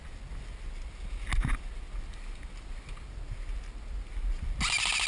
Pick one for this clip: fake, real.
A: real